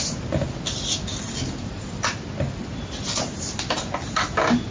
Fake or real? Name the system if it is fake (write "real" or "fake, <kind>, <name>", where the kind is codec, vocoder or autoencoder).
real